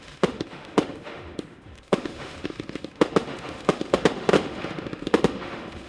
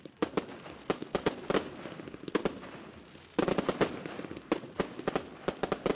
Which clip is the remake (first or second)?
first